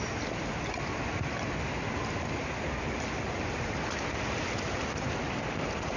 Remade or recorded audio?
recorded